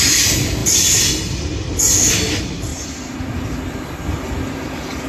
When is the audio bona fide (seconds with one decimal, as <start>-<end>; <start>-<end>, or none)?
0.0-5.1